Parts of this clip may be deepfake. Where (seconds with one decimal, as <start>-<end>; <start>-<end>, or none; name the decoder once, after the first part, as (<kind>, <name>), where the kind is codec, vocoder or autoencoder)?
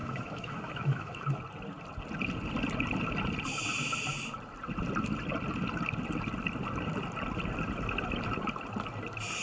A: 0.0-1.4 (autoencoder, DAC-VAE)